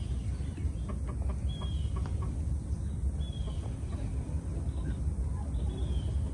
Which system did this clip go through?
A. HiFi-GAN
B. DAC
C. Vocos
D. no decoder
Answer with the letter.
D